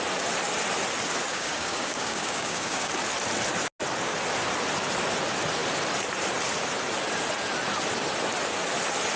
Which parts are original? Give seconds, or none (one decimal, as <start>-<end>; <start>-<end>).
0.0-1.3; 2.9-9.2